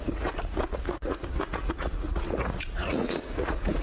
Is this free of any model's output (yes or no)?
no